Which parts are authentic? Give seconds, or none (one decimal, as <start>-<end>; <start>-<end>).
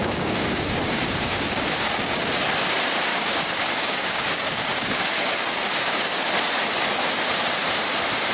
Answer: 2.3-3.1; 6.3-8.3